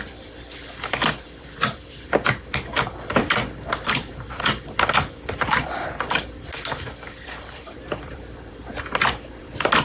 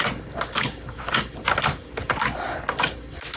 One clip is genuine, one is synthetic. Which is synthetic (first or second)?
first